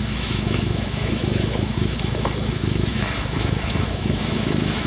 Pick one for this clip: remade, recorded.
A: remade